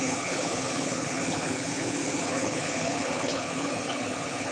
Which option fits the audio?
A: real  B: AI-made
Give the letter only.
B